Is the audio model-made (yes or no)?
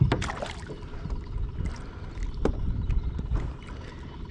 no